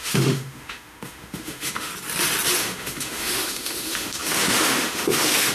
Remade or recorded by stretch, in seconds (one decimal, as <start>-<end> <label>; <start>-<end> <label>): 0.0-1.9 remade; 1.9-2.6 recorded; 2.6-5.5 remade